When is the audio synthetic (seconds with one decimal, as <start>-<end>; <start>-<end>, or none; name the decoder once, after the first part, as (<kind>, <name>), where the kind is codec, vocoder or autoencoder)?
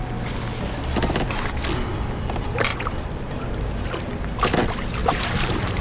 2.7-3.4 (vocoder, BigVGAN v2); 5.0-5.8